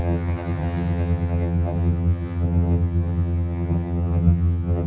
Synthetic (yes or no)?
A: yes